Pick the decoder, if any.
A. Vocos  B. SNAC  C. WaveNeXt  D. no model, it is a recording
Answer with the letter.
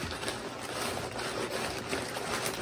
D